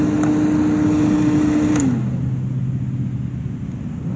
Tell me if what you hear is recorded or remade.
recorded